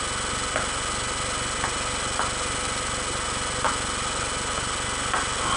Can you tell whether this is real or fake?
real